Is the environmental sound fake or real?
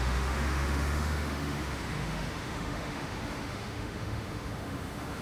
fake